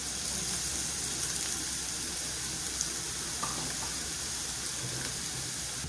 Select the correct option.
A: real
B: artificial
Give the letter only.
A